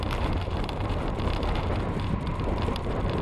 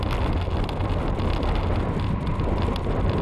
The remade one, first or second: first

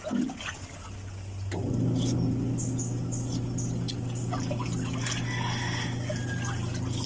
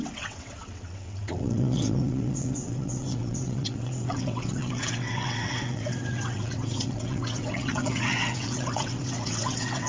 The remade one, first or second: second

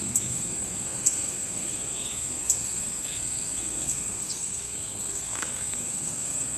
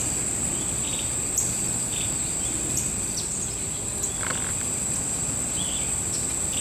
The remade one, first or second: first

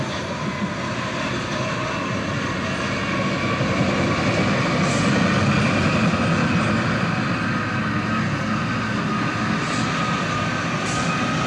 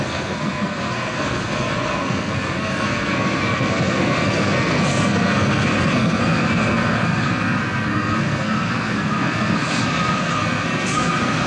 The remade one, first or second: second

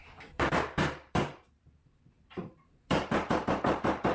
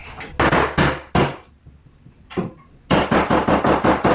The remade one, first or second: first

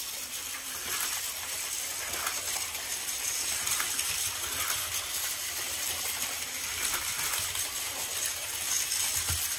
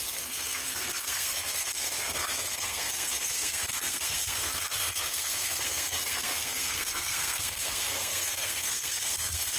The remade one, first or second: second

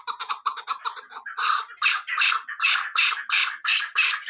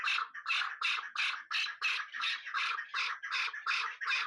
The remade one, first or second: first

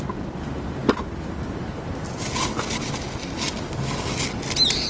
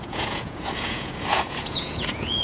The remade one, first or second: second